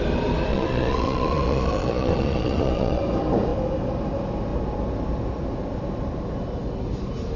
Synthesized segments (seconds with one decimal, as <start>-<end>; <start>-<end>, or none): 0.5-3.0